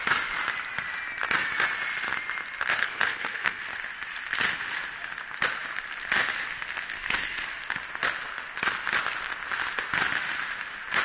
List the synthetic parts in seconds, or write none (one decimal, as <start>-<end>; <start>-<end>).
2.8-3.6

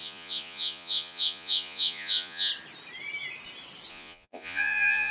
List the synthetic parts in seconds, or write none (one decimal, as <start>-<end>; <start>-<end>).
0.0-2.5; 3.9-5.1